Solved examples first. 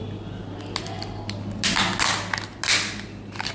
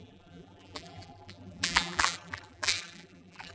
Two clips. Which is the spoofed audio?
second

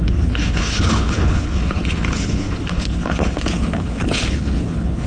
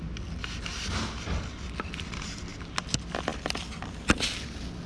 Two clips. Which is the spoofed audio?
first